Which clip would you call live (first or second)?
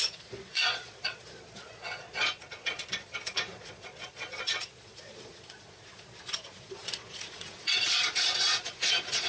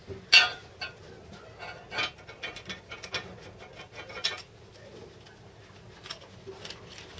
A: second